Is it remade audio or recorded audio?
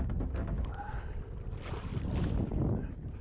recorded